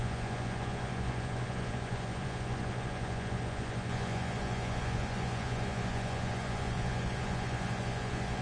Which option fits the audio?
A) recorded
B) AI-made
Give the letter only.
B